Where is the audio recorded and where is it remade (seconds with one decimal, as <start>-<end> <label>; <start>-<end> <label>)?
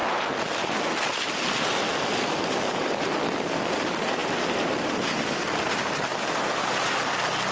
0.0-6.1 recorded; 6.1-6.9 remade; 6.9-7.5 recorded